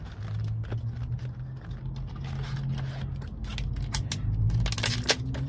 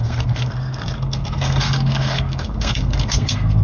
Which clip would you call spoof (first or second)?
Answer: second